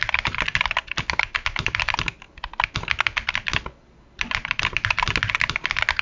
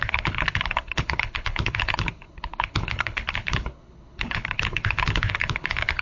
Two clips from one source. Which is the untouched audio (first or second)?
first